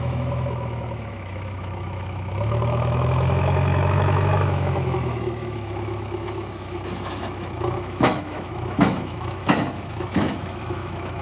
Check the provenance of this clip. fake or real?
fake